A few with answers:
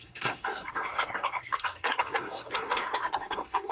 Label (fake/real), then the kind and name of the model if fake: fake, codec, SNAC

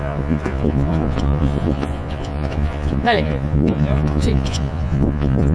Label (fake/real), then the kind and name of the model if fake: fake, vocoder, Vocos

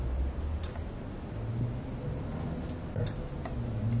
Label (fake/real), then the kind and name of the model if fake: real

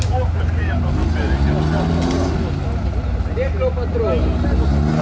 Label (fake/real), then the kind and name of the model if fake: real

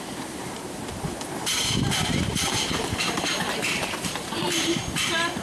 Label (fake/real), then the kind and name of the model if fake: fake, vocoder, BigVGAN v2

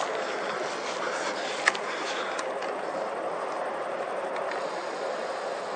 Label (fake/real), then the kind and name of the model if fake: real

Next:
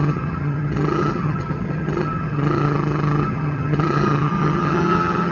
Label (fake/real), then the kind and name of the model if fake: fake, vocoder, HiFi-GAN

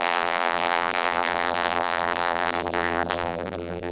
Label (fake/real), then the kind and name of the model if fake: fake, vocoder, BigVGAN v2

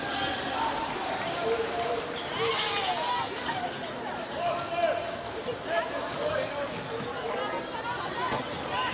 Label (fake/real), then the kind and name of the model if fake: real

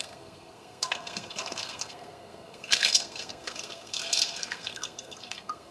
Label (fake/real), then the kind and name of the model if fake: fake, codec, SNAC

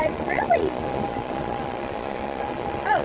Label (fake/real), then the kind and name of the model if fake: fake, vocoder, Vocos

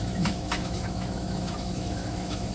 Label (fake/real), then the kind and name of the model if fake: fake, autoencoder, DAC-VAE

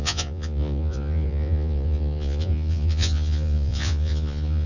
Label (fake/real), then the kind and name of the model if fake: fake, vocoder, Vocos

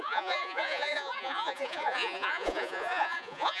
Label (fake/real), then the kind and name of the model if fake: fake, vocoder, Vocos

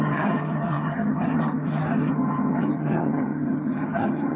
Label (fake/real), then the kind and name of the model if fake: fake, vocoder, HiFi-GAN